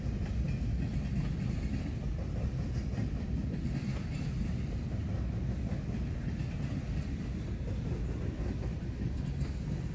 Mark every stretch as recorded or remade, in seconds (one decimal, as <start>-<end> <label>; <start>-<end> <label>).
0.0-9.9 recorded

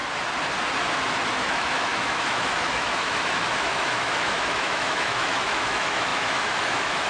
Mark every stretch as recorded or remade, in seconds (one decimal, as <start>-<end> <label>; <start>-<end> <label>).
0.0-1.3 recorded; 1.3-7.1 remade